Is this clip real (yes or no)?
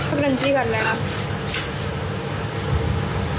yes